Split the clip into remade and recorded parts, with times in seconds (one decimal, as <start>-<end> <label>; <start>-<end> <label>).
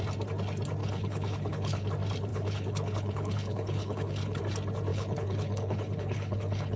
0.0-0.8 recorded; 0.8-1.9 remade; 1.9-2.3 recorded; 2.3-4.4 remade; 4.4-4.9 recorded; 4.9-6.8 remade